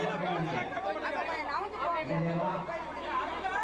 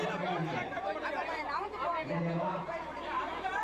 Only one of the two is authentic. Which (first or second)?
first